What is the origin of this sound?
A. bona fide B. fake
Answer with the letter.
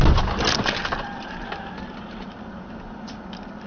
A